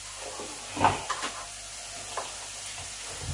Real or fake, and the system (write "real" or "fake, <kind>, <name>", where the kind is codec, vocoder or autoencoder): real